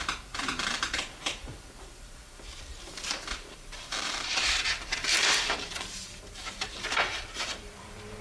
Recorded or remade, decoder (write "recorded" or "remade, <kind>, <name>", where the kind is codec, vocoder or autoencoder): remade, vocoder, BigVGAN v2